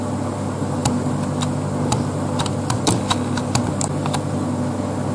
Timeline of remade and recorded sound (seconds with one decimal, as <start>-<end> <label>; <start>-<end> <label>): 0.0-5.1 recorded

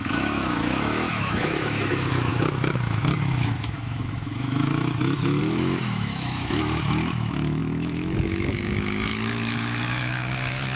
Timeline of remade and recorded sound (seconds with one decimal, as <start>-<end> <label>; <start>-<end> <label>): 0.0-10.8 remade

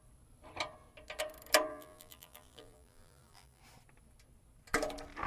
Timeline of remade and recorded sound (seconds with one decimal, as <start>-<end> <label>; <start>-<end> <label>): 0.0-1.7 recorded; 1.7-3.6 remade; 3.6-5.3 recorded

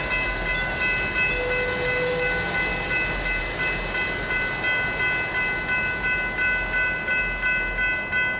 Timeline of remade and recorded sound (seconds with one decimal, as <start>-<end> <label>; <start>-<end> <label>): 0.0-8.4 recorded

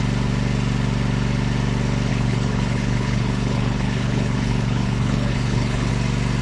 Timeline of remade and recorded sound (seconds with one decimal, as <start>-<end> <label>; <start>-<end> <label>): 0.0-2.1 recorded; 2.1-5.9 remade; 5.9-6.4 recorded

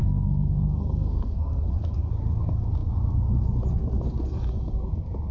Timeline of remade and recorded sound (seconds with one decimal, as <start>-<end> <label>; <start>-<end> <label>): 0.0-1.7 remade; 1.7-5.3 recorded